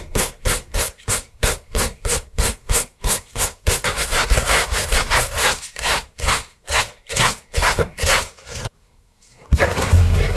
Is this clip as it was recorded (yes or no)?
no